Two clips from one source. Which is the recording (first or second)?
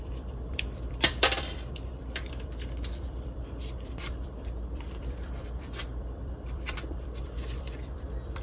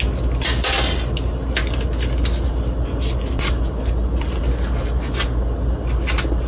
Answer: second